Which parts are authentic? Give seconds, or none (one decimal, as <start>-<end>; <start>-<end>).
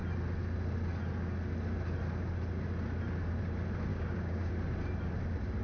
0.0-3.9; 4.5-5.6